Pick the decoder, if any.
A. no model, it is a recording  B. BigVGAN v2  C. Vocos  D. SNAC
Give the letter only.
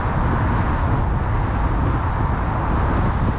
A